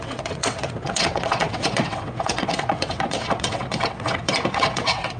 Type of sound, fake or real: fake